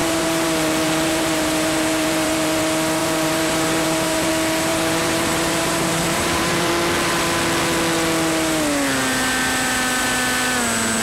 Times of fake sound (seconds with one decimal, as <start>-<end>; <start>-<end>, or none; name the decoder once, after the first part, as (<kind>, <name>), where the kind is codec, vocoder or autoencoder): 0.0-2.6 (vocoder, BigVGAN v2); 3.0-4.3; 4.7-6.7